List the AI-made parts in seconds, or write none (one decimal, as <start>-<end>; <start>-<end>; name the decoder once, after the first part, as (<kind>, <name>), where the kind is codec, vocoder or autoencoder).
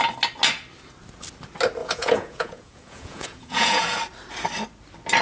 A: 1.8-4.0 (vocoder, Vocos)